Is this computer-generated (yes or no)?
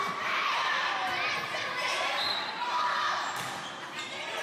yes